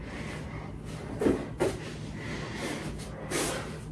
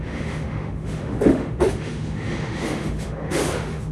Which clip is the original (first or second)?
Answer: first